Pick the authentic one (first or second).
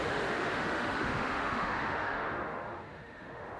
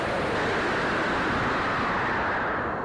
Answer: second